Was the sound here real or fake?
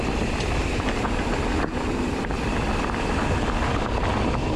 real